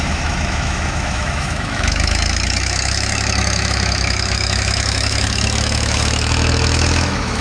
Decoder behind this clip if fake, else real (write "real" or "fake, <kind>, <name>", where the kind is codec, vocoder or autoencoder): fake, autoencoder, DAC-VAE